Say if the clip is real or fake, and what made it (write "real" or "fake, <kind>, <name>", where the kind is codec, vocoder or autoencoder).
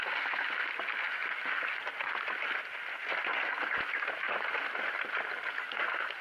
real